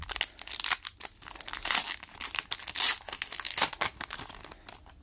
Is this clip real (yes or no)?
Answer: yes